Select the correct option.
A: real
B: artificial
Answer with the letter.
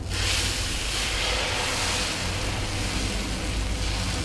A